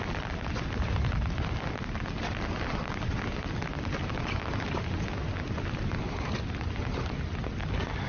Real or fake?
real